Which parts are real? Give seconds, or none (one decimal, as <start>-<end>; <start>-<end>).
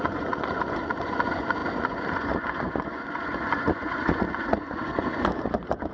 none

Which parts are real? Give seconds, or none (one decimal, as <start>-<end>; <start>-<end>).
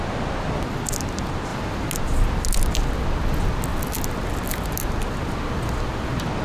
0.0-6.4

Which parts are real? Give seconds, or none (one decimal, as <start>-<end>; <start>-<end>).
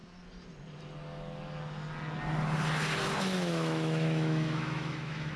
0.0-3.2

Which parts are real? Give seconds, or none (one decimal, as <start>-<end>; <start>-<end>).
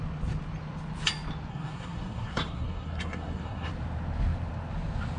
0.0-1.5; 3.7-5.2